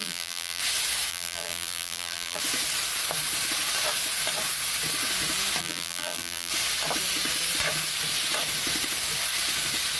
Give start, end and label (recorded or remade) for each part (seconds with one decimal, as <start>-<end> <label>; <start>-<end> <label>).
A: 0.0-0.6 remade; 0.6-1.1 recorded; 1.1-2.4 remade; 2.4-5.6 recorded; 5.6-6.5 remade; 6.5-10.0 recorded